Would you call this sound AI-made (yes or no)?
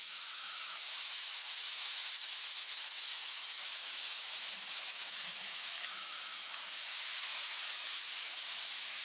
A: yes